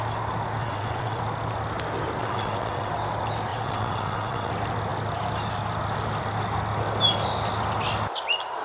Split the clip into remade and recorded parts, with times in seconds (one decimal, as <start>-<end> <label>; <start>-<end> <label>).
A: 0.0-0.6 recorded; 0.6-1.2 remade; 1.2-2.2 recorded; 2.2-2.9 remade; 2.9-3.5 recorded; 3.5-4.5 remade; 4.5-8.6 recorded

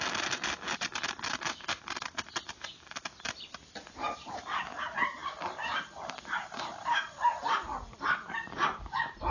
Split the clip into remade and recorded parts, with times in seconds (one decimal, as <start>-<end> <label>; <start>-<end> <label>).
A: 0.0-5.2 recorded; 5.2-7.2 remade; 7.2-9.3 recorded

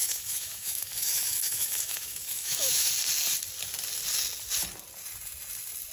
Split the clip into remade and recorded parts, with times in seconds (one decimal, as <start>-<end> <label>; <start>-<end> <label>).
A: 0.0-2.9 remade; 2.9-5.9 recorded